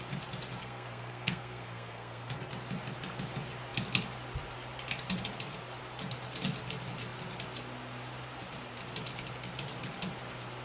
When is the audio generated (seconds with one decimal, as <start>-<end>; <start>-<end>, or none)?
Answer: 0.6-2.5